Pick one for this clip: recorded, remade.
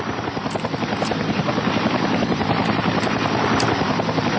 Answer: remade